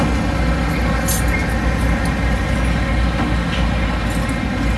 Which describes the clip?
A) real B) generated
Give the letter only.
A